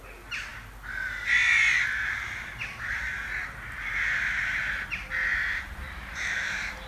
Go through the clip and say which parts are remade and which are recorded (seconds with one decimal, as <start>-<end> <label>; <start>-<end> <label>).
0.0-5.3 recorded; 5.3-6.9 remade